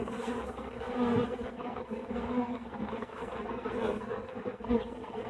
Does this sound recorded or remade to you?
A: remade